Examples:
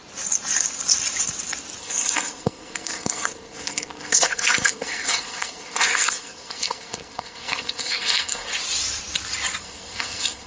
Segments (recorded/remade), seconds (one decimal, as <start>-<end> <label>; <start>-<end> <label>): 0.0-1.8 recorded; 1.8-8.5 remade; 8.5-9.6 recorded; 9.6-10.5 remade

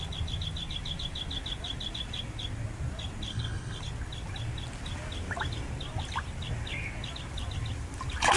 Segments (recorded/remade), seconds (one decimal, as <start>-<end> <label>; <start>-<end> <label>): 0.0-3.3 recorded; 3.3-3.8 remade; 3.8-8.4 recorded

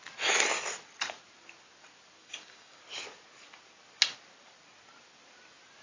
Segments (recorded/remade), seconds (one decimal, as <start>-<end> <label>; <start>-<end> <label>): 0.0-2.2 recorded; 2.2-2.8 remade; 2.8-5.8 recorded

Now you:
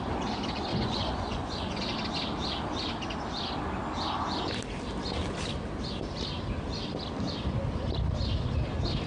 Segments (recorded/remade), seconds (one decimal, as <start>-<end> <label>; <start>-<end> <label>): 0.0-0.7 recorded; 0.7-1.8 remade; 1.8-9.1 recorded

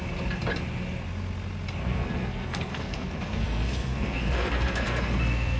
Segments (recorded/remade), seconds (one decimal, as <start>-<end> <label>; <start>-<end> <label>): 0.0-1.8 recorded; 1.8-5.6 remade

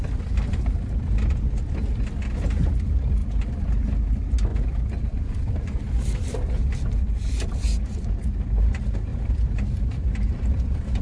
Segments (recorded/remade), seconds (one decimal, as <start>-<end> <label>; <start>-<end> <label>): 0.0-4.5 recorded; 4.5-8.1 remade; 8.1-9.1 recorded; 9.1-9.8 remade; 9.8-11.0 recorded

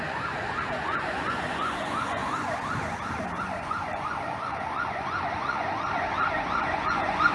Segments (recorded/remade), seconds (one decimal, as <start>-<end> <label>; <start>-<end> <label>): 0.0-2.2 remade; 2.2-3.4 recorded; 3.4-7.3 remade